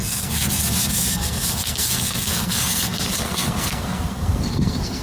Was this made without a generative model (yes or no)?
no